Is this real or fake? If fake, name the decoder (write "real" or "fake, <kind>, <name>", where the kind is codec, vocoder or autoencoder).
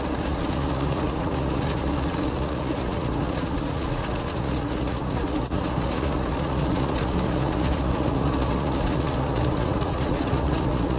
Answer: fake, vocoder, Vocos